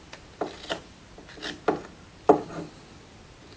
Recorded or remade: recorded